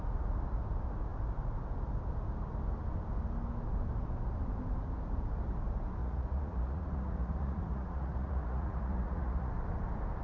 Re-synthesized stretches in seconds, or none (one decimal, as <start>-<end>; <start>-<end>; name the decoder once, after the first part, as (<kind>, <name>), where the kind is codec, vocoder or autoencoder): 6.0-9.5 (vocoder, Vocos)